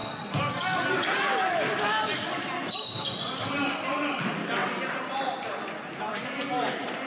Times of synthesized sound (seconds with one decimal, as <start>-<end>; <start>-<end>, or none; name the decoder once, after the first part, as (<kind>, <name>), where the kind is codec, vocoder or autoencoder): none

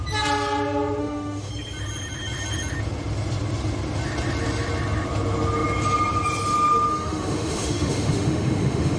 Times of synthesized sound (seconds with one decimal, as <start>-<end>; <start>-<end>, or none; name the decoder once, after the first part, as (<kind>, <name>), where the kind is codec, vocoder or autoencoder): 1.0-1.5 (autoencoder, DAC-VAE); 6.9-9.0

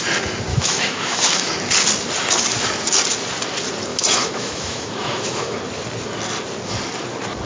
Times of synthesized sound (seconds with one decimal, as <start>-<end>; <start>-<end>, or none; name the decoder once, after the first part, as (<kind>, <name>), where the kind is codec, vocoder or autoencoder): 0.5-1.5 (autoencoder, DAC-VAE); 3.9-5.6

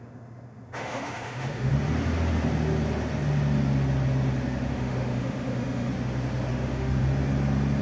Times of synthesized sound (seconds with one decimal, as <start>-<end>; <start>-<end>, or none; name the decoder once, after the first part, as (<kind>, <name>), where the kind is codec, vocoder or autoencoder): 0.0-1.7 (autoencoder, DAC-VAE); 4.7-5.9; 6.5-7.0

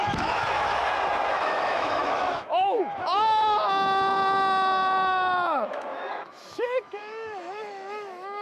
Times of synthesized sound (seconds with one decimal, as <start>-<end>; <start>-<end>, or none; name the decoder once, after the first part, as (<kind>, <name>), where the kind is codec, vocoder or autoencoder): 0.0-0.7 (autoencoder, DAC-VAE); 1.3-8.4

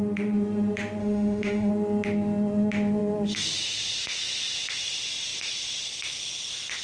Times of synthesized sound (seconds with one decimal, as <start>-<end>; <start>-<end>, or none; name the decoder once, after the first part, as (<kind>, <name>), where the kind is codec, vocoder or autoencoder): 1.0-1.7 (autoencoder, DAC-VAE)

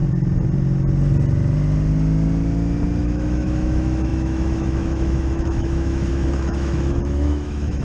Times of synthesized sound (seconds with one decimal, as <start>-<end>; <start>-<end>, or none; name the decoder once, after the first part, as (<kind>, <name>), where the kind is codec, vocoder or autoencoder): 3.0-7.8 (autoencoder, DAC-VAE)